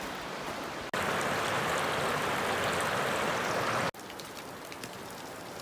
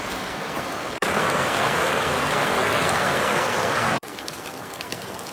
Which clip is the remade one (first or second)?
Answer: second